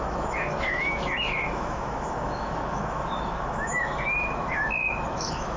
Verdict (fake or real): fake